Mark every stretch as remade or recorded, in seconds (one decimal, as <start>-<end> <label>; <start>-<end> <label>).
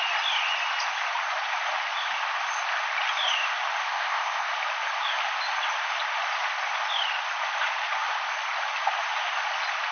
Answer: 0.0-3.9 recorded; 3.9-4.5 remade; 4.5-9.9 recorded